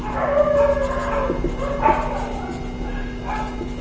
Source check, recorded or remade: recorded